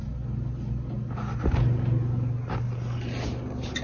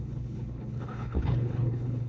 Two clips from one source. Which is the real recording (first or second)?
first